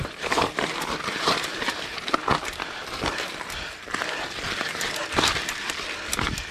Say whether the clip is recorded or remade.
recorded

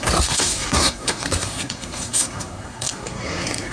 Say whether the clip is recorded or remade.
remade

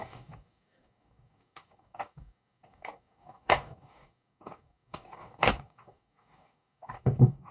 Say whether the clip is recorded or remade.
remade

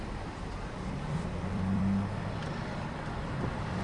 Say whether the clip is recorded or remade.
remade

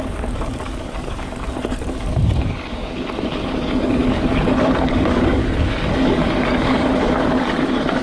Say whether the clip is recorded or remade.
remade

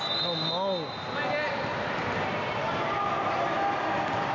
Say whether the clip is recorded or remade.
recorded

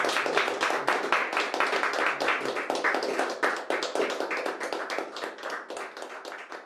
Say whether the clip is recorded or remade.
recorded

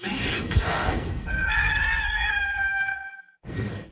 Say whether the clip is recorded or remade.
remade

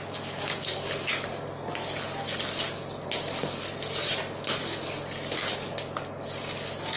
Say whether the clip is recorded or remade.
recorded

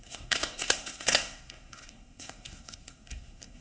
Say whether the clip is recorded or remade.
remade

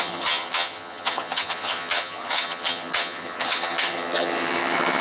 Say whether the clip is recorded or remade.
remade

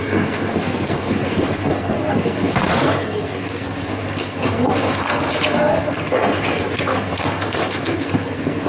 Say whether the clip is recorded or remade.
remade